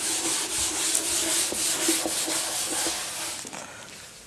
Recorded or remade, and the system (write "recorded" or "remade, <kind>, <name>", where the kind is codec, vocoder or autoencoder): recorded